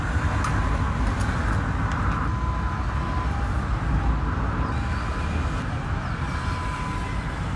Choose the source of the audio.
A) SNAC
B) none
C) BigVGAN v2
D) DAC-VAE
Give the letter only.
B